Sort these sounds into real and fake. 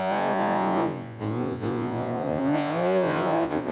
fake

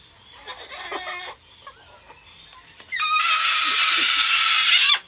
real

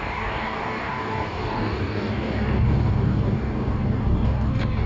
fake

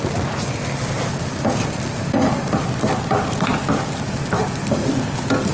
real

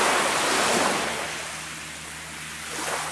real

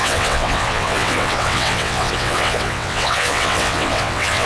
fake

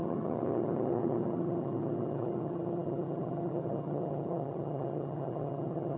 fake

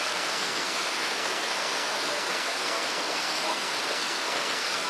fake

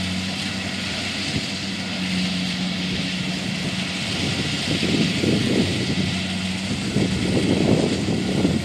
real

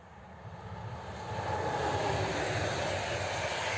real